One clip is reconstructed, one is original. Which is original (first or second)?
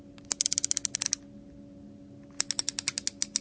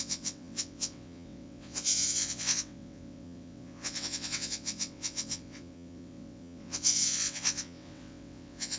first